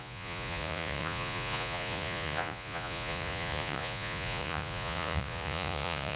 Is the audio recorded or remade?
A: remade